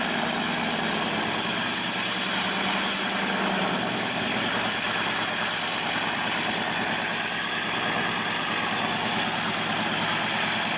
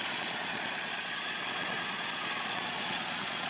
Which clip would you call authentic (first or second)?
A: first